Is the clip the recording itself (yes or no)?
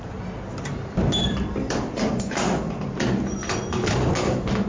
no